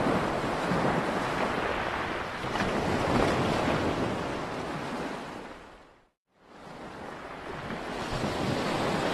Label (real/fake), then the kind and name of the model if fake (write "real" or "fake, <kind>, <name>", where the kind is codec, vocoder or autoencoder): real